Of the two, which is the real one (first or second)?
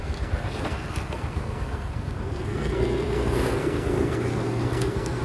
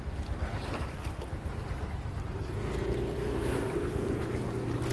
second